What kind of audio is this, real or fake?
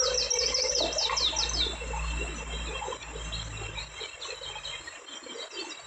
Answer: real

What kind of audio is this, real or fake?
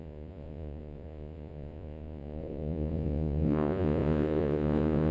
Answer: fake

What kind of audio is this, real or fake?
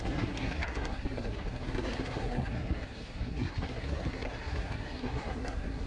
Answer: fake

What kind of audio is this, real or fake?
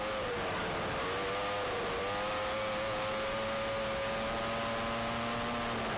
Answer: real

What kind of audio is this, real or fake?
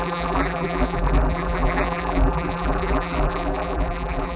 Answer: fake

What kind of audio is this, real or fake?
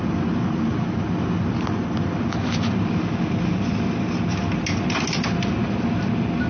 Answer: real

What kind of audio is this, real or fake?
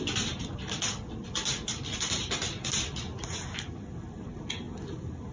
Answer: real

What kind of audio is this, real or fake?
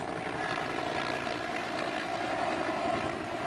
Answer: real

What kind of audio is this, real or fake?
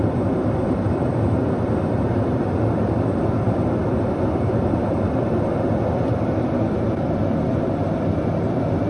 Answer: fake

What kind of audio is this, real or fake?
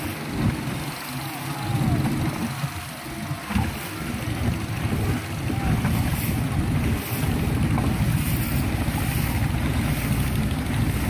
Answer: real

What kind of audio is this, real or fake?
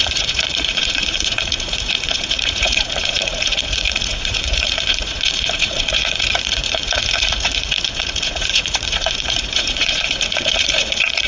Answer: fake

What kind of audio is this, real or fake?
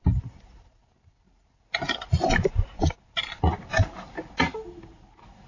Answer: real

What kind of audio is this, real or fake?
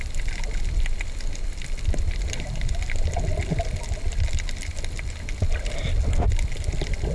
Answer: real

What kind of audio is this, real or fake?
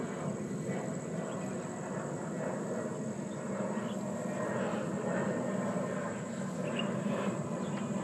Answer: real